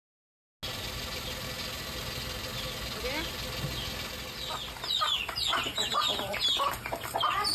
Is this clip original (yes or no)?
yes